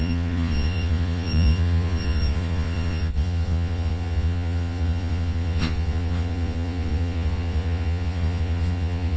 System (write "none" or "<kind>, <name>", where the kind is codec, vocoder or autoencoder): vocoder, Vocos